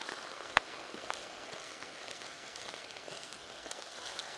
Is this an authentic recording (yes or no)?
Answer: no